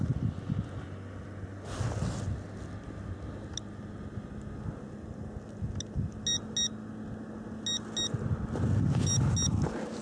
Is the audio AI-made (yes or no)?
no